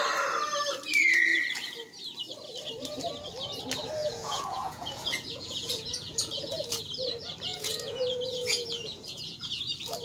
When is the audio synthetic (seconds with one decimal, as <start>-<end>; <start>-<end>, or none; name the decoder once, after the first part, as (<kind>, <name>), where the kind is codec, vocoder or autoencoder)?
4.0-6.8 (vocoder, Vocos); 7.5-9.6